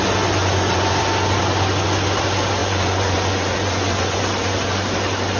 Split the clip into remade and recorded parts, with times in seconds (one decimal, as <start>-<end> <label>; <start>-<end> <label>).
0.0-0.4 recorded; 0.4-1.0 remade; 1.0-2.6 recorded; 2.6-4.2 remade; 4.2-5.4 recorded

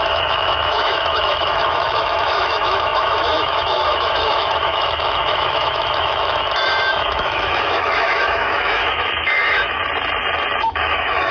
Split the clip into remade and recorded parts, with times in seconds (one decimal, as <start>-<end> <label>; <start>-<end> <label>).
0.0-9.8 remade; 9.8-10.7 recorded; 10.7-11.3 remade

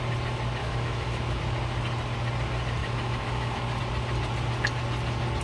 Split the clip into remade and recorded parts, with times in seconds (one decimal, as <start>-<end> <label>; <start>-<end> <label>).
0.0-0.6 recorded; 0.6-1.4 remade; 1.4-2.8 recorded; 2.8-3.8 remade; 3.8-5.4 recorded

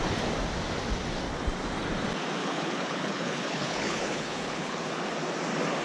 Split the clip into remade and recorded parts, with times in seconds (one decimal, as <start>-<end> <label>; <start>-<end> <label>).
0.0-2.4 recorded; 2.4-4.9 remade; 4.9-5.8 recorded

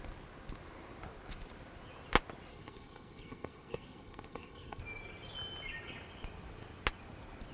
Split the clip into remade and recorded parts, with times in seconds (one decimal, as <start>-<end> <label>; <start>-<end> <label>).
0.0-2.5 recorded; 2.5-4.8 remade; 4.8-7.5 recorded

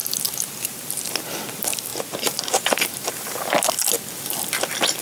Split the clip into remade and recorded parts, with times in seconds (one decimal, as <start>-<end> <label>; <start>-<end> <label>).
0.0-1.2 remade; 1.2-1.9 recorded; 1.9-3.7 remade; 3.7-5.0 recorded

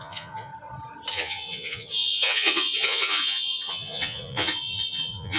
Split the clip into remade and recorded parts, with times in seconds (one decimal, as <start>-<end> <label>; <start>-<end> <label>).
0.0-0.5 remade; 0.5-1.1 recorded; 1.1-5.4 remade

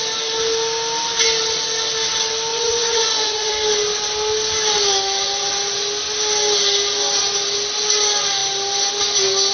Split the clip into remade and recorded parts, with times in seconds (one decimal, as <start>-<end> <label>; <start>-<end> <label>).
0.0-2.5 recorded; 2.5-3.5 remade; 3.5-9.5 recorded